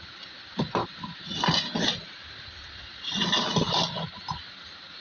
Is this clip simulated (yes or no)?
no